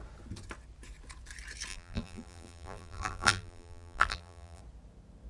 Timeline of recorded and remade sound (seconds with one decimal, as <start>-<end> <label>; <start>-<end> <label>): 0.0-1.7 recorded; 1.7-4.6 remade; 4.6-5.3 recorded